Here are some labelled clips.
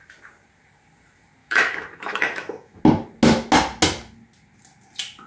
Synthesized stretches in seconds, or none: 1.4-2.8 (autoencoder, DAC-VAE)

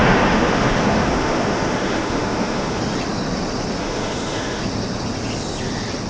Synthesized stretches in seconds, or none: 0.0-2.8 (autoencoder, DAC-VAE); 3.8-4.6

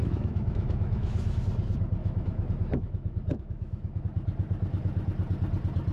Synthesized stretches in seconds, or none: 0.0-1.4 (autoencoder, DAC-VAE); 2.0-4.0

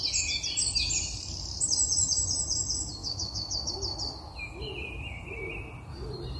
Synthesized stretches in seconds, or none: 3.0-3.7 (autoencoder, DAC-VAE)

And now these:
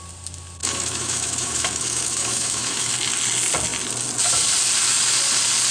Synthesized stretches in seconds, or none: 0.6-2.9 (autoencoder, DAC-VAE)